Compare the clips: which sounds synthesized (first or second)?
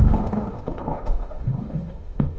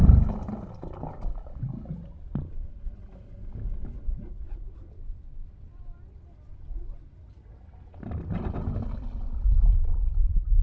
first